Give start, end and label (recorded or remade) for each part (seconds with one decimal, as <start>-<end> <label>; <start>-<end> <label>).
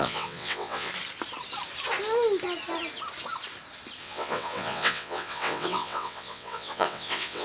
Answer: 0.0-0.9 remade; 0.9-4.0 recorded; 4.0-7.4 remade